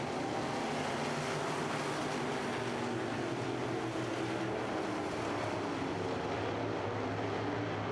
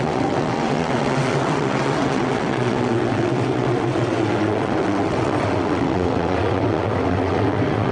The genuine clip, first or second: first